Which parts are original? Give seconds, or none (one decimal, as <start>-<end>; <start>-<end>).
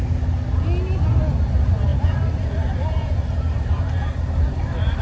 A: 0.0-1.9